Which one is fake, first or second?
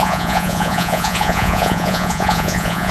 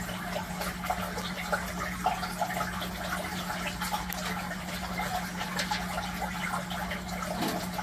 first